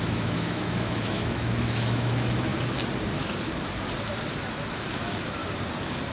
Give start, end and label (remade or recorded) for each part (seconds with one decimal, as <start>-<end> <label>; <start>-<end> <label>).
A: 0.0-2.5 remade; 2.5-4.7 recorded; 4.7-5.4 remade; 5.4-6.1 recorded